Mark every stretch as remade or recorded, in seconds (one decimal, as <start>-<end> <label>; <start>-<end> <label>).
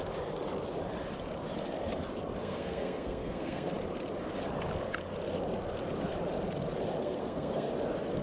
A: 0.0-2.4 recorded; 2.4-3.7 remade; 3.7-7.0 recorded; 7.0-7.7 remade; 7.7-8.2 recorded